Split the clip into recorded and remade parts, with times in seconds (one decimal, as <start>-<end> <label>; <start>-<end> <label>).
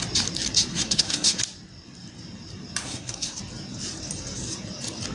0.0-0.7 recorded; 0.7-1.4 remade; 1.4-2.8 recorded; 2.8-3.4 remade; 3.4-5.1 recorded